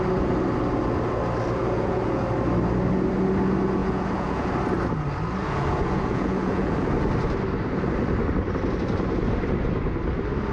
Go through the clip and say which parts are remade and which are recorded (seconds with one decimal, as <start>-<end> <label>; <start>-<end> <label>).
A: 0.0-1.6 recorded; 1.6-2.2 remade; 2.2-3.8 recorded; 3.8-4.5 remade; 4.5-5.4 recorded; 5.4-6.9 remade; 6.9-10.5 recorded